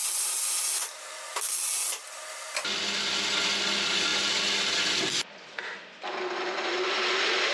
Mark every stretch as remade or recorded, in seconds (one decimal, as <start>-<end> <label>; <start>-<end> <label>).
0.0-7.5 recorded